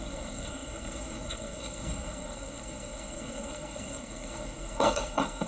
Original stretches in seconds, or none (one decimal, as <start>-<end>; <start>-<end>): none